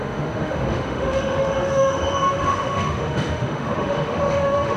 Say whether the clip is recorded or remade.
remade